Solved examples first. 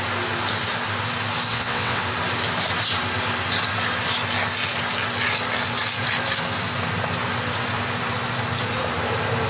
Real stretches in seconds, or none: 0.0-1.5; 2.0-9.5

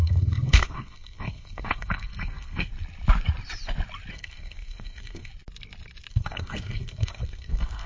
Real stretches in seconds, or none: 2.7-4.1; 5.3-6.1

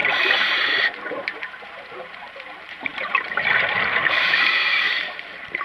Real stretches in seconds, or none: none

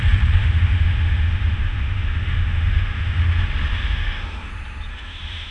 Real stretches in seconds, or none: 0.0-0.4; 3.2-3.7; 4.5-4.9

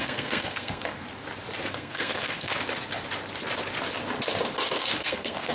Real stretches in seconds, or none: 1.1-1.7; 2.5-5.0